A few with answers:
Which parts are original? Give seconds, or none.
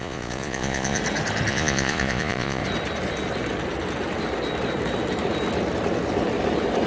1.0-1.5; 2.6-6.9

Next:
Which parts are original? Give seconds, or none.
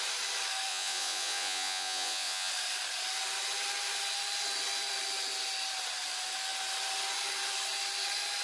0.0-0.7; 2.5-8.4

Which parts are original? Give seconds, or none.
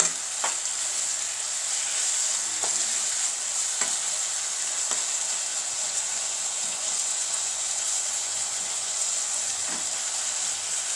0.0-5.5; 9.6-11.0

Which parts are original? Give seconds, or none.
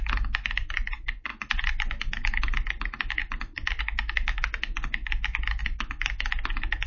0.0-6.9